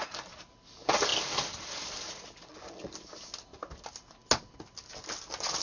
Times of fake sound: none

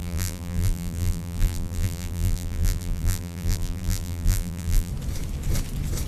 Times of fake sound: 0.0-4.9 (vocoder, BigVGAN v2)

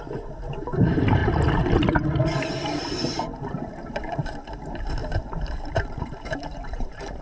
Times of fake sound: 0.0-1.2 (vocoder, BigVGAN v2); 2.8-7.2

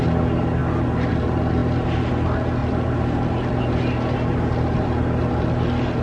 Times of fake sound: 1.6-2.1 (vocoder, BigVGAN v2); 2.6-5.4

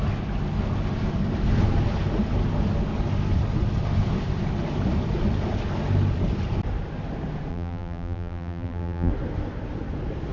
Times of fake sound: 7.5-9.1 (vocoder, BigVGAN v2)

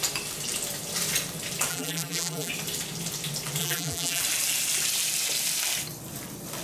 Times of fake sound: 1.7-2.5 (vocoder, BigVGAN v2); 3.6-4.2